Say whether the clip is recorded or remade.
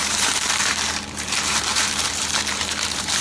remade